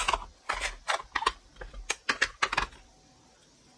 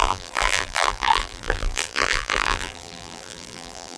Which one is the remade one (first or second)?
second